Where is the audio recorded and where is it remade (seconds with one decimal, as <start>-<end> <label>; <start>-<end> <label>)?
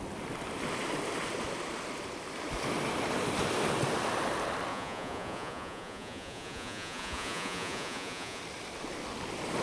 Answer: 0.0-4.7 recorded; 4.7-8.4 remade; 8.4-9.6 recorded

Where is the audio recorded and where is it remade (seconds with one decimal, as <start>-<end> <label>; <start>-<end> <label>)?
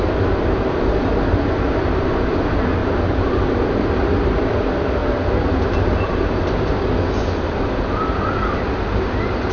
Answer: 0.0-2.8 recorded; 2.8-3.9 remade; 3.9-5.0 recorded; 5.0-6.4 remade; 6.4-7.2 recorded; 7.2-8.3 remade; 8.3-9.5 recorded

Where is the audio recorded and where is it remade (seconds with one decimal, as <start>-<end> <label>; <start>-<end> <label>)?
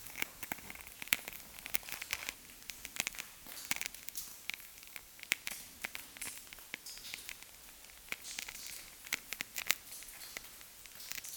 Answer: 0.0-0.7 remade; 0.7-4.3 recorded; 4.3-5.2 remade; 5.2-11.4 recorded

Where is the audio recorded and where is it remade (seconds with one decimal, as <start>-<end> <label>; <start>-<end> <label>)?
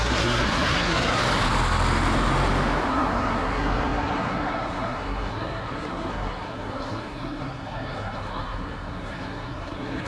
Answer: 0.0-1.2 remade; 1.2-2.9 recorded; 2.9-10.1 remade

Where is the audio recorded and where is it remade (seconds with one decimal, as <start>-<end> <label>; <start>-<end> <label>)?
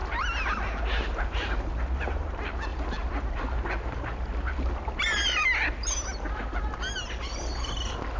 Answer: 0.0-8.2 recorded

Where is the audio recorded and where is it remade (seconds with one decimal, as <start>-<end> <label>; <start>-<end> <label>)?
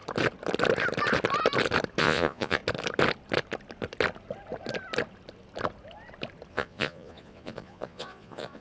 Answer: 0.0-2.0 recorded; 2.0-2.6 remade; 2.6-6.5 recorded; 6.5-8.6 remade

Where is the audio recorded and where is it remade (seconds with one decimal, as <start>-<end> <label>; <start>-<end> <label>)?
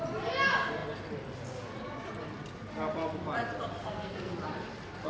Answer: 0.0-3.8 recorded; 3.8-4.3 remade; 4.3-5.1 recorded